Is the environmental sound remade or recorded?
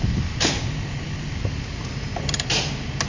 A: recorded